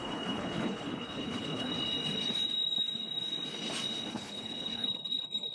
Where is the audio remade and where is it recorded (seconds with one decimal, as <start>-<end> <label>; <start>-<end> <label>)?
0.0-1.7 remade; 1.7-4.1 recorded; 4.1-5.5 remade